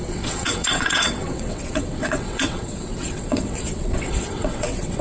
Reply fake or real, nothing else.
fake